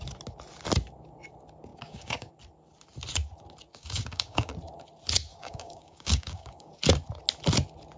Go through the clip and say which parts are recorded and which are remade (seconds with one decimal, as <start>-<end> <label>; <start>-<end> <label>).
0.0-1.7 recorded; 1.7-2.3 remade; 2.3-3.7 recorded; 3.7-4.5 remade; 4.5-5.3 recorded; 5.3-6.7 remade; 6.7-8.0 recorded